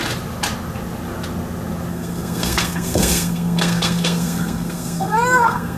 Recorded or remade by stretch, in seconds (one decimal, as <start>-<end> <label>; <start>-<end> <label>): 0.0-1.9 recorded; 1.9-5.8 remade